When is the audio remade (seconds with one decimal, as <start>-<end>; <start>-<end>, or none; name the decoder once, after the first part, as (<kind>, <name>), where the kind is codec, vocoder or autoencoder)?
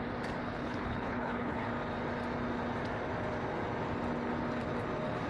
0.4-1.7 (codec, HILCodec)